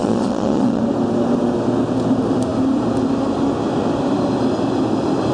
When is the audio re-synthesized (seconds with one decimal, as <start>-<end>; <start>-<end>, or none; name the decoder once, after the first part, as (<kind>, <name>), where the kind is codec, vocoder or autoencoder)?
0.0-0.8 (vocoder, Vocos)